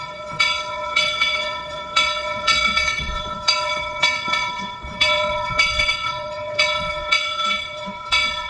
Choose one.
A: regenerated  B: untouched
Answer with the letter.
A